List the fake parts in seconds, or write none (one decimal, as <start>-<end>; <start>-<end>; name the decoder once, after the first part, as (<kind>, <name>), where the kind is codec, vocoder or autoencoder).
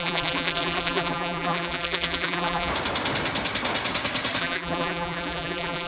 0.0-2.7 (vocoder, BigVGAN v2); 4.4-5.9